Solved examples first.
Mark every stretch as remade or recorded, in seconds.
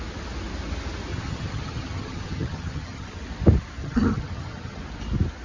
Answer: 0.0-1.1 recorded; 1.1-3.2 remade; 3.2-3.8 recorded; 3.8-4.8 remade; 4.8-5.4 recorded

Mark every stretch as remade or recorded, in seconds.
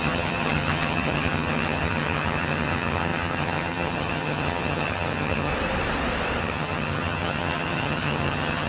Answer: 0.0-5.5 remade; 5.5-6.4 recorded; 6.4-8.7 remade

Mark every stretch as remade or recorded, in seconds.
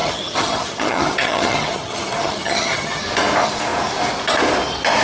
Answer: 0.0-3.0 remade; 3.0-5.0 recorded